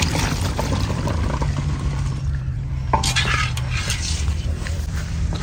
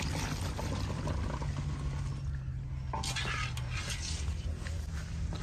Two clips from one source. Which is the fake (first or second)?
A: first